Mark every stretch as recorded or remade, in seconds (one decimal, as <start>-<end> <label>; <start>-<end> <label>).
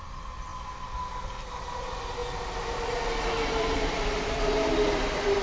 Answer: 0.0-0.5 remade; 0.5-1.3 recorded; 1.3-2.2 remade; 2.2-3.5 recorded; 3.5-5.4 remade